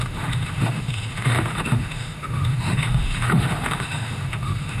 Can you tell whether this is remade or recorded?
remade